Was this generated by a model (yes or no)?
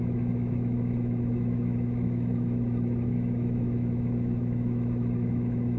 yes